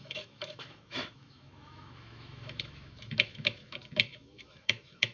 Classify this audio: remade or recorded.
remade